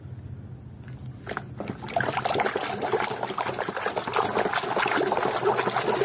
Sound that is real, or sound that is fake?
real